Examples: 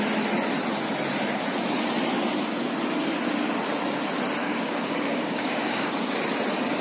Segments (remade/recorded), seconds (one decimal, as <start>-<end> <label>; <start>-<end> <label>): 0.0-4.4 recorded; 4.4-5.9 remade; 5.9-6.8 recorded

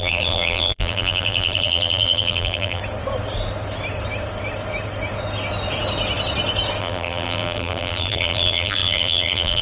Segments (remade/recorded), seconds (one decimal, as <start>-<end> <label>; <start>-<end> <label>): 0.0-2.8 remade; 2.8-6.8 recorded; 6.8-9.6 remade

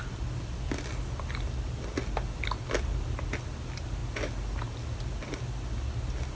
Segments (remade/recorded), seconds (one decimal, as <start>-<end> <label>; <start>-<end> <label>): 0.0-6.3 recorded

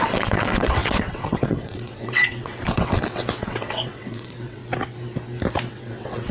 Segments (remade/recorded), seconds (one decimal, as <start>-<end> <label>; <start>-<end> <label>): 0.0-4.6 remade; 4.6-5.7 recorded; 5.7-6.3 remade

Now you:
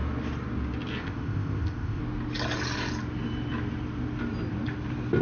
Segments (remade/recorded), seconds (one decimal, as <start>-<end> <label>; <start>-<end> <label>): 0.0-1.0 recorded; 1.0-2.0 remade; 2.0-5.2 recorded

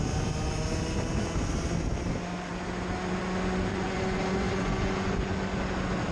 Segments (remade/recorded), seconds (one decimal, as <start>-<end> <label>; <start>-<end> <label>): 0.0-3.7 recorded; 3.7-5.3 remade; 5.3-6.1 recorded

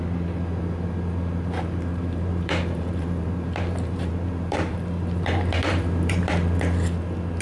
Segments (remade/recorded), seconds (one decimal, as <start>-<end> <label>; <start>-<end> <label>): 0.0-1.9 recorded; 1.9-6.3 remade; 6.3-7.4 recorded

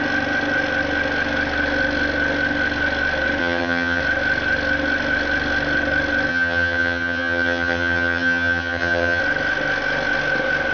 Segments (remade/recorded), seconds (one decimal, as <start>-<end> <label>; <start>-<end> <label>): 0.0-3.4 recorded; 3.4-4.0 remade; 4.0-6.3 recorded; 6.3-9.2 remade; 9.2-10.7 recorded